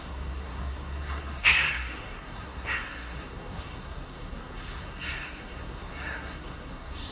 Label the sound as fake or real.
fake